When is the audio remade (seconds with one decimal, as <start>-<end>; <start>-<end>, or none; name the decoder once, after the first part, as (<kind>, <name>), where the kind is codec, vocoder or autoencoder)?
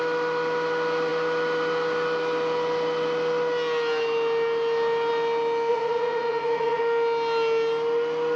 5.7-6.8 (vocoder, Vocos)